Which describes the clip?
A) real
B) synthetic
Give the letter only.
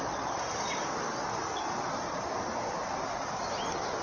A